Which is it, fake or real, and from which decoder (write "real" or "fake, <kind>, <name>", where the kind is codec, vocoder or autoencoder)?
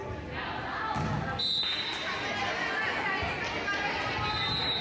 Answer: real